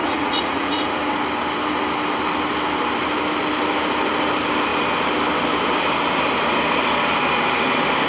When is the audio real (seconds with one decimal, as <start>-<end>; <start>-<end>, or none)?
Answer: 1.1-8.1